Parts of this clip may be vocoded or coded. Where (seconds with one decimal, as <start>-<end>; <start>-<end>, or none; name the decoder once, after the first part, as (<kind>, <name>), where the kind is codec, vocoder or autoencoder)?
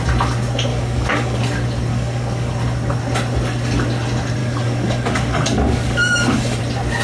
0.7-1.4 (codec, DAC); 1.9-2.5; 4.4-6.6